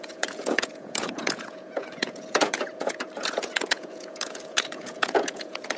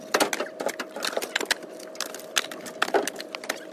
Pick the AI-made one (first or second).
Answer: first